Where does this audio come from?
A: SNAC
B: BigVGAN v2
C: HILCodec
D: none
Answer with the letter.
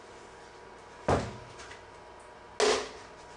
D